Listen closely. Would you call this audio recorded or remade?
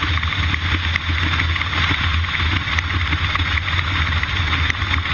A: recorded